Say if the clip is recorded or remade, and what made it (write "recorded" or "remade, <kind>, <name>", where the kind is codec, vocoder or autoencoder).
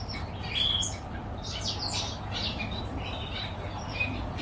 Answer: recorded